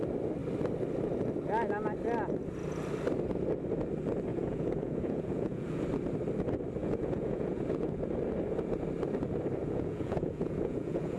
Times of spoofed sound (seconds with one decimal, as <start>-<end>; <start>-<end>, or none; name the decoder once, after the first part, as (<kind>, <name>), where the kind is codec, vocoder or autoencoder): 4.3-5.8 (vocoder, Vocos); 6.8-8.1; 9.6-11.2